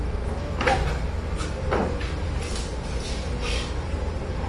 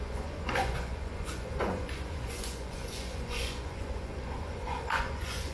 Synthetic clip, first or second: second